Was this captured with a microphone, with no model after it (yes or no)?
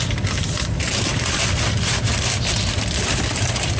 no